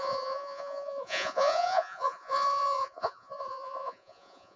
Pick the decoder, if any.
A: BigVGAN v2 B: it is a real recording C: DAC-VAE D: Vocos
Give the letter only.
D